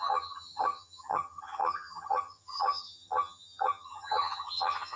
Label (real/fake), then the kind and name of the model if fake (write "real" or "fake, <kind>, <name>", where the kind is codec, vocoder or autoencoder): fake, vocoder, HiFi-GAN